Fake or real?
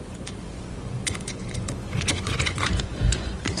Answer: fake